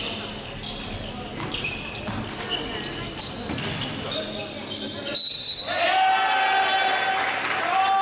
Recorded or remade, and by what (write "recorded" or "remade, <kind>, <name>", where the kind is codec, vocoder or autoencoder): recorded